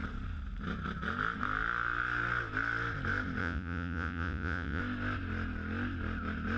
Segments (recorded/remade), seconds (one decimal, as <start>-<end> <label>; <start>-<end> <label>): 0.0-3.4 recorded; 3.4-4.8 remade; 4.8-6.6 recorded